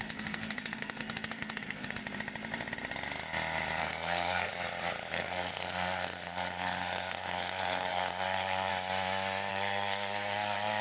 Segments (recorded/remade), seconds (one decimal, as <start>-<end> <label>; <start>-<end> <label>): 0.0-2.0 remade; 2.0-3.8 recorded; 3.8-4.5 remade; 4.5-5.1 recorded; 5.1-8.7 remade; 8.7-9.5 recorded; 9.5-10.8 remade